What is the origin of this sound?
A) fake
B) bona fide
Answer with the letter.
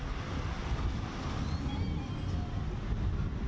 B